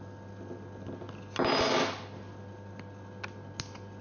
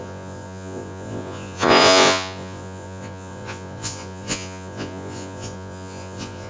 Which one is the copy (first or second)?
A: second